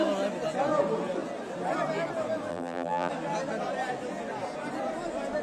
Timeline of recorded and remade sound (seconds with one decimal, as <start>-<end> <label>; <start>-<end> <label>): 0.0-2.5 recorded; 2.5-3.1 remade; 3.1-5.4 recorded